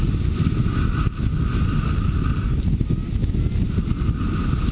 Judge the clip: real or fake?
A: real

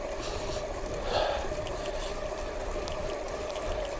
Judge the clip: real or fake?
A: real